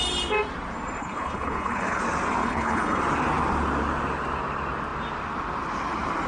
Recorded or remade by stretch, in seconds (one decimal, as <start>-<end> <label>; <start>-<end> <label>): 0.0-1.0 recorded; 1.0-2.0 remade; 2.0-2.4 recorded; 2.4-3.0 remade; 3.0-6.3 recorded